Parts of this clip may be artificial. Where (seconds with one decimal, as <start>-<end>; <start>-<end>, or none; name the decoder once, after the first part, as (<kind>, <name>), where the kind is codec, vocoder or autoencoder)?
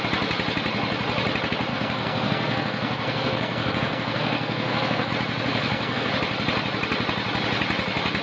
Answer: 1.7-5.1 (codec, SNAC); 5.5-6.1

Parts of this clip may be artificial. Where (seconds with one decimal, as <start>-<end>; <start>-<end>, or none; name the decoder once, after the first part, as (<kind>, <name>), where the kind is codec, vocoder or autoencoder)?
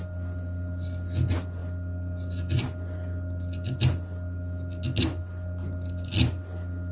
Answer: none